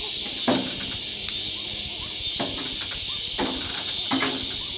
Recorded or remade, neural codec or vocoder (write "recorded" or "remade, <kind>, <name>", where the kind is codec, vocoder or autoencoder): recorded